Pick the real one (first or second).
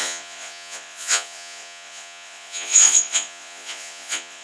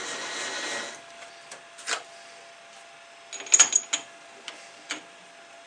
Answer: second